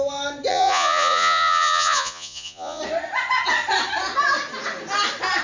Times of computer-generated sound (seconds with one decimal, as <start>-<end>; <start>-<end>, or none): 0.5-2.8